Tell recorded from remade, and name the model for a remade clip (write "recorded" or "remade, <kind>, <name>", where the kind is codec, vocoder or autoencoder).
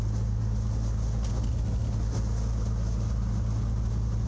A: recorded